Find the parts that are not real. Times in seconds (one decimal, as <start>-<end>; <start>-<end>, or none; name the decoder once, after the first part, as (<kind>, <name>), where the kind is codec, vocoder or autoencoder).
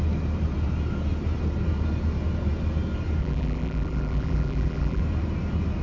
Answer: 3.2-5.0 (vocoder, BigVGAN v2)